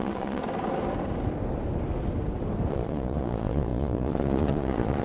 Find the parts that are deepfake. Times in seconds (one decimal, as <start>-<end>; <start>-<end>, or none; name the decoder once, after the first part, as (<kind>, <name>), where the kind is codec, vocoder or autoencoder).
0.0-0.4 (vocoder, Vocos); 2.7-5.0